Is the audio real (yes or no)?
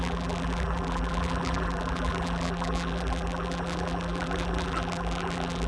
no